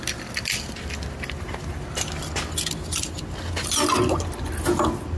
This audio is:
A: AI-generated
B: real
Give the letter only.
B